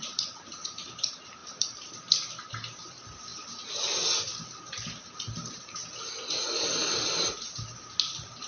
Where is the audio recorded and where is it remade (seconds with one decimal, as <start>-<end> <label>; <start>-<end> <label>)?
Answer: 0.0-1.4 recorded; 1.4-2.1 remade; 2.1-8.5 recorded